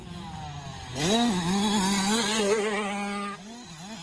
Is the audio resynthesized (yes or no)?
no